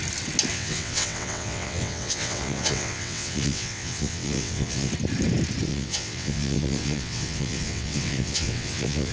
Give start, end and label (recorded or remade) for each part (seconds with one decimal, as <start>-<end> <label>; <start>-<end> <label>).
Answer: 0.0-0.5 recorded; 0.5-4.9 remade; 4.9-5.7 recorded; 5.7-9.1 remade